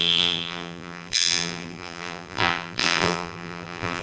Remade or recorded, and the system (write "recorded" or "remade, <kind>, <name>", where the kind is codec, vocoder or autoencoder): remade, vocoder, BigVGAN v2